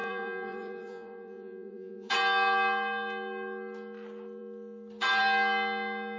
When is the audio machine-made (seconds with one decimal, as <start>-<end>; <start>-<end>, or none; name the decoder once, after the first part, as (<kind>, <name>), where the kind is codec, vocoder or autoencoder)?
0.0-2.1 (vocoder, Vocos)